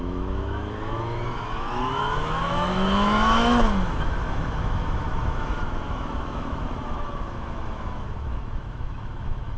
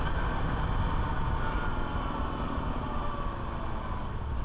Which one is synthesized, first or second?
first